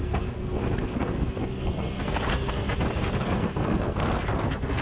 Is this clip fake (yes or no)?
yes